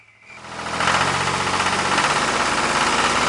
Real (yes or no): yes